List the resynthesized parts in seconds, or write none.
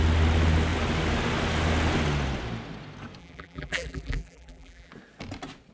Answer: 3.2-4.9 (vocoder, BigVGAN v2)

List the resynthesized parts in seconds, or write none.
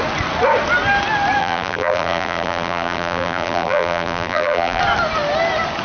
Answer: 1.4-4.8 (vocoder, BigVGAN v2)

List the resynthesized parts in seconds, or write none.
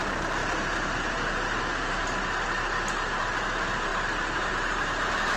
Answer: 0.0-2.0 (vocoder, BigVGAN v2); 3.2-3.9; 4.5-5.4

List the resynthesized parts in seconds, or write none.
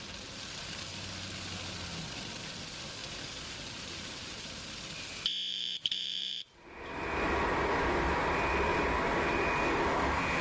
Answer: 3.0-4.6 (vocoder, BigVGAN v2); 5.5-7.1; 8.7-9.4